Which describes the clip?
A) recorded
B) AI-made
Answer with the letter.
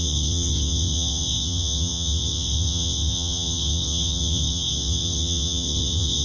B